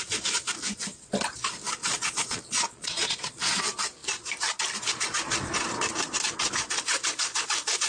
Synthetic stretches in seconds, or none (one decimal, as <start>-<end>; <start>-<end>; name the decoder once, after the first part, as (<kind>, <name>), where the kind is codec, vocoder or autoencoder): 1.8-3.6 (vocoder, Vocos)